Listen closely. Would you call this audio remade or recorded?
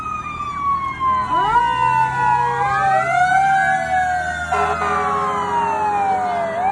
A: recorded